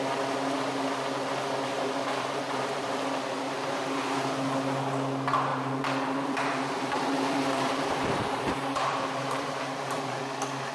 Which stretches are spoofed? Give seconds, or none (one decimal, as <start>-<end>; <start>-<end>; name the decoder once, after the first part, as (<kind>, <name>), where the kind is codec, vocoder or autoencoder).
1.7-4.0 (vocoder, BigVGAN v2); 5.5-10.2